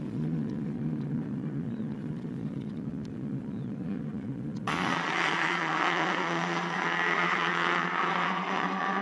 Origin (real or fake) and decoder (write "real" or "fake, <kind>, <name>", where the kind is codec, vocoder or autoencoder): fake, vocoder, Vocos